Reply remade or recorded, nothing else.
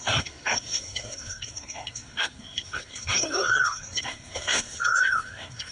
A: remade